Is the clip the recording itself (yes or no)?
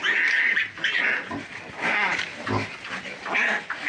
yes